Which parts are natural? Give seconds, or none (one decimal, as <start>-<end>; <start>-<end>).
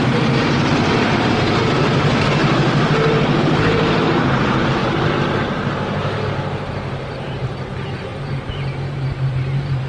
2.4-3.4; 4.8-5.4